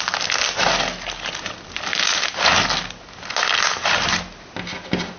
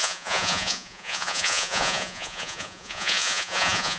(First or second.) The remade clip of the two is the second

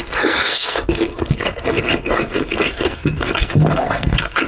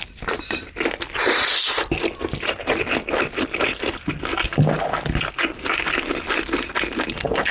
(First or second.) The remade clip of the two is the first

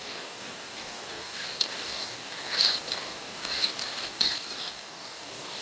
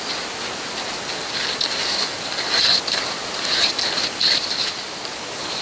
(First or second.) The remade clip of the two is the first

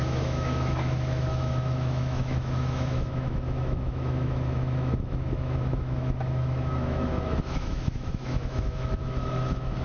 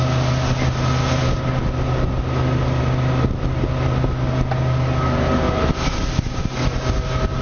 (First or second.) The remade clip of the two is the first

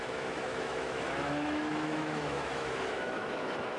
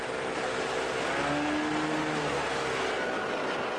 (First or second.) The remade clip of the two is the first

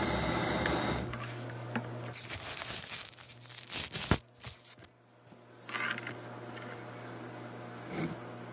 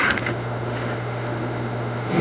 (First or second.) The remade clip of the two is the second